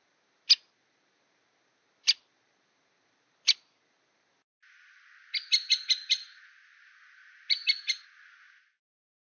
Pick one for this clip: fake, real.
real